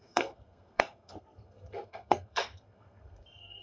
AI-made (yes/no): yes